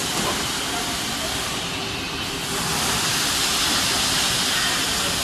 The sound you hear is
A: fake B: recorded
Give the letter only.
B